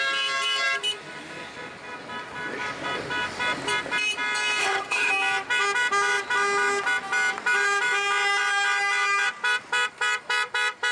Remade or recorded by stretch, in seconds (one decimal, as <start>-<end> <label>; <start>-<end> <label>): 0.0-4.6 recorded; 4.6-5.1 remade; 5.1-10.9 recorded

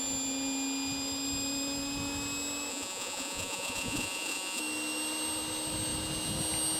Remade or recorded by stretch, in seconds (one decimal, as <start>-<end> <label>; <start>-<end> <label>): 0.0-2.7 recorded; 2.7-4.6 remade; 4.6-6.8 recorded

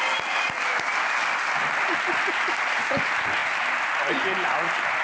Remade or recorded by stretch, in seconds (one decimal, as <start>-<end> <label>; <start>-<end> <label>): 0.0-5.0 recorded

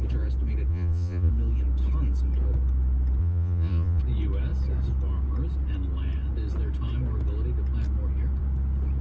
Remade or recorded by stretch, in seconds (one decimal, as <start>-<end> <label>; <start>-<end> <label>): 0.0-0.7 recorded; 0.7-1.3 remade; 1.3-3.2 recorded; 3.2-4.0 remade; 4.0-9.0 recorded